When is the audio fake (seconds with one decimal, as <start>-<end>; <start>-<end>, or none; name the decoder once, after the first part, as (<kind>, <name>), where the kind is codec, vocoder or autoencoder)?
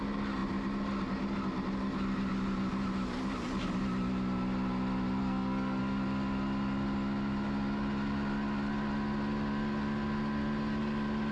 5.2-5.8 (codec, SNAC)